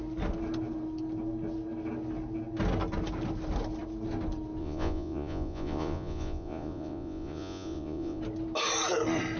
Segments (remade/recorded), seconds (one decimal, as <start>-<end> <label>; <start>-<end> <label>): 0.0-4.6 recorded; 4.6-8.2 remade; 8.2-9.4 recorded